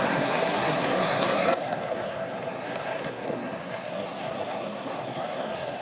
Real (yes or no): no